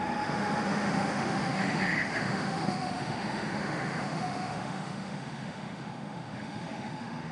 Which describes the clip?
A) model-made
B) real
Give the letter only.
A